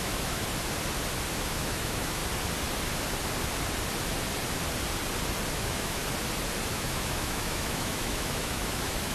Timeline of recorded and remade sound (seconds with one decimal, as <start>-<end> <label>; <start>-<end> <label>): 0.0-0.4 remade; 0.4-1.3 recorded; 1.3-2.2 remade; 2.2-5.5 recorded; 5.5-6.0 remade; 6.0-6.7 recorded; 6.7-9.1 remade